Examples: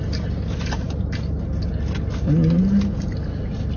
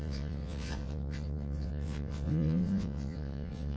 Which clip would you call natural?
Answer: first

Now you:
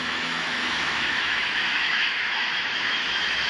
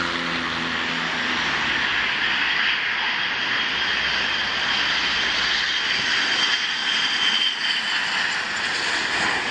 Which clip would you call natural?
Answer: second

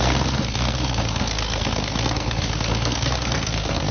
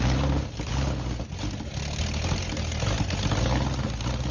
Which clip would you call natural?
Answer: second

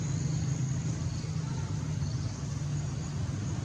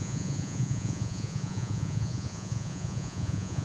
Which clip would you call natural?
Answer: first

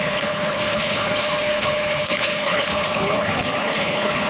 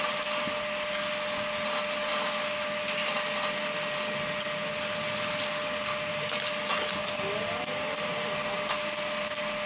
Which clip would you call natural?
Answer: second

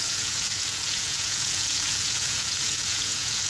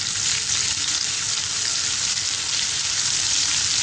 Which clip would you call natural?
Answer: second